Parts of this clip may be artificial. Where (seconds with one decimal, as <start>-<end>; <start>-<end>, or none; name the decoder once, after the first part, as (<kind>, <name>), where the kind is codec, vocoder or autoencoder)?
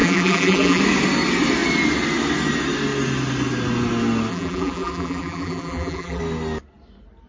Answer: 0.0-0.8 (vocoder, BigVGAN v2); 4.3-6.2